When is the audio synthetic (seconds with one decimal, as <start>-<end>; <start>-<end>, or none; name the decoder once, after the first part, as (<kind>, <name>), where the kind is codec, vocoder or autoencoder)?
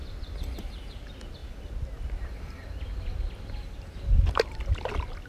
none